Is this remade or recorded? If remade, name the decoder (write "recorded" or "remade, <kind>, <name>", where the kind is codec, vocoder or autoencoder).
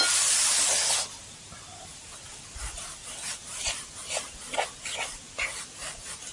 recorded